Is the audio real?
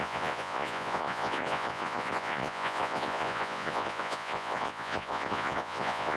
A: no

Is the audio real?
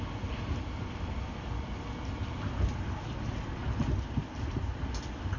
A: yes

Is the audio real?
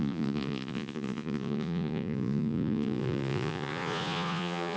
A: no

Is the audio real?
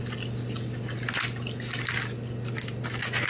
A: yes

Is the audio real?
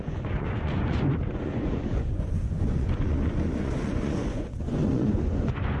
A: no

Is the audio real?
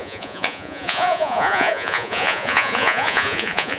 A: no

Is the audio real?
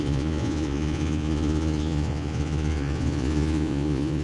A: no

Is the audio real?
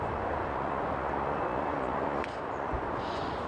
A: no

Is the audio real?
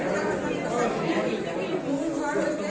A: yes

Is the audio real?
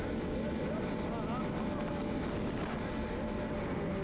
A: yes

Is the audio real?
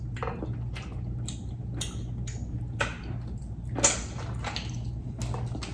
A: yes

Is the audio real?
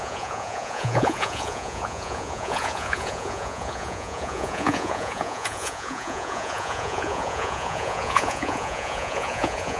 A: no